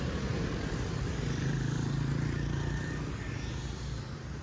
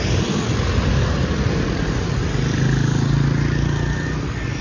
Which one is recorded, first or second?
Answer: second